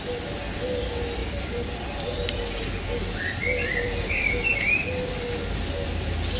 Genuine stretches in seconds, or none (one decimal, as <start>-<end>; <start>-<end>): 0.0-1.2; 2.6-3.7; 4.7-6.4